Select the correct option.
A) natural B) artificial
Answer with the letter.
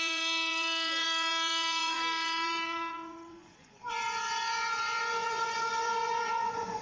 B